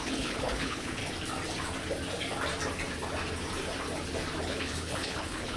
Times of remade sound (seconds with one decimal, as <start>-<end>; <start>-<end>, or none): 0.0-1.0; 4.4-5.6